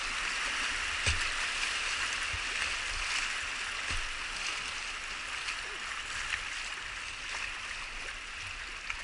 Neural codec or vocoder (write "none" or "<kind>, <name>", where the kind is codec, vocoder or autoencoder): none